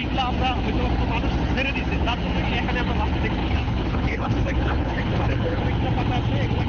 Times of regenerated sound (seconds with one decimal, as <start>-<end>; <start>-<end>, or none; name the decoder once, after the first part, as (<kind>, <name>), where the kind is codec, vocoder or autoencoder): 3.4-5.6 (codec, HILCodec)